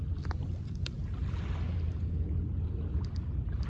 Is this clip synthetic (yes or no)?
no